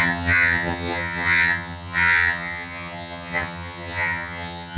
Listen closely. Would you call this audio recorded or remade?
remade